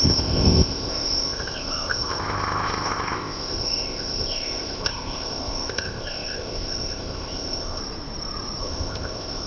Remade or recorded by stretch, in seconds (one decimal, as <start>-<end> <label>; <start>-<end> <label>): 0.0-7.8 remade; 7.8-8.6 recorded; 8.6-9.5 remade